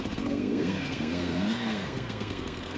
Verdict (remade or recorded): remade